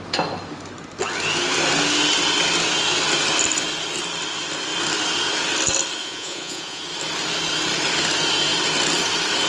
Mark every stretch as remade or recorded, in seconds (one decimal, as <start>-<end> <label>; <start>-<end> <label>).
0.0-6.0 recorded; 6.0-6.8 remade; 6.8-9.5 recorded